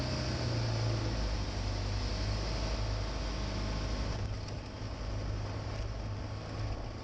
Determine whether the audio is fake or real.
real